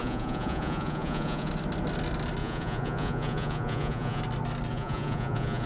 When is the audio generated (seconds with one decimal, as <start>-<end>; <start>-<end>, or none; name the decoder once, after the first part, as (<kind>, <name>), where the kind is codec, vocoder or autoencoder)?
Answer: 0.0-1.5 (vocoder, Vocos); 2.4-4.2; 4.7-5.7